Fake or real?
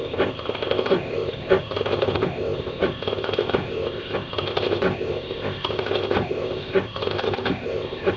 fake